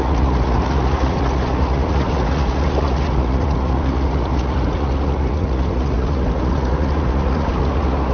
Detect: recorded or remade remade